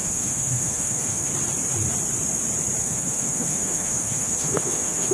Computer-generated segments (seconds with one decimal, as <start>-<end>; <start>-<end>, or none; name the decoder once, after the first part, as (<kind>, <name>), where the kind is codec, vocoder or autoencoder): 0.0-1.3 (autoencoder, DAC-VAE); 2.8-5.1